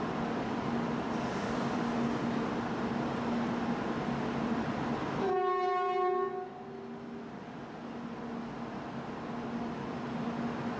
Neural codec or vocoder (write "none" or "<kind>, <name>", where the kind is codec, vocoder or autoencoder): none